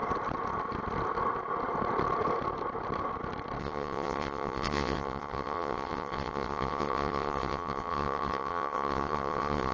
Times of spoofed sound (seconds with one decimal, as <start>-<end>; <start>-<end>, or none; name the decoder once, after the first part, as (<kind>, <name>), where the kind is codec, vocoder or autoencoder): 3.6-9.7 (vocoder, WaveNeXt)